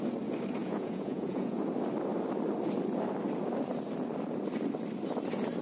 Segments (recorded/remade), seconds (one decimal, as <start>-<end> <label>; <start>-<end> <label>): 0.0-0.6 recorded; 0.6-1.7 remade; 1.7-5.6 recorded